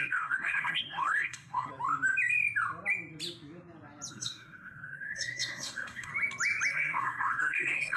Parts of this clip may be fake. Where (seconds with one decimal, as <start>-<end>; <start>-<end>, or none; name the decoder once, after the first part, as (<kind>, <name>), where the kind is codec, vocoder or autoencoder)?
0.0-1.7 (codec, SNAC); 4.1-6.1; 6.7-8.0

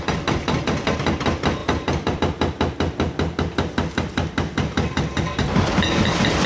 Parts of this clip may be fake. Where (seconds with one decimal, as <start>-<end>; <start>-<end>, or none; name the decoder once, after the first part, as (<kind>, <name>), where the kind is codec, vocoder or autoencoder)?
1.6-2.2 (vocoder, BigVGAN v2); 5.3-5.8

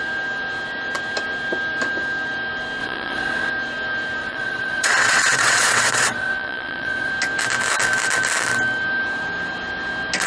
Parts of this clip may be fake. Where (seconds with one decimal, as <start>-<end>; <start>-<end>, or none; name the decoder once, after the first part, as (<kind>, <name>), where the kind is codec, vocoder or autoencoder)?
2.8-3.5 (vocoder, WaveNeXt); 4.2-7.1

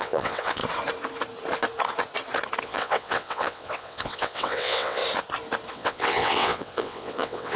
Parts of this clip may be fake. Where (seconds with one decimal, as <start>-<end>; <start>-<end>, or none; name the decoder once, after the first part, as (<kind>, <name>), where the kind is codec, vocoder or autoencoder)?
0.0-0.6 (vocoder, WaveNeXt); 2.6-5.0; 5.7-7.6